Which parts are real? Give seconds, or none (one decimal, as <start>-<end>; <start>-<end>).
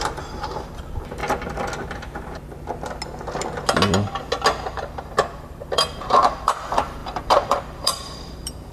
1.2-5.0